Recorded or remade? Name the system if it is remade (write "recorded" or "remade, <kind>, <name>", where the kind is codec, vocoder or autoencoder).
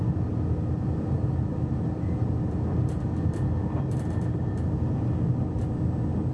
recorded